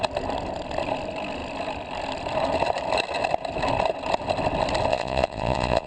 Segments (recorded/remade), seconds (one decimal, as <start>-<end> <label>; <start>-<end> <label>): 0.0-4.9 recorded; 4.9-5.9 remade